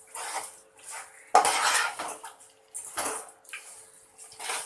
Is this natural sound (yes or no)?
yes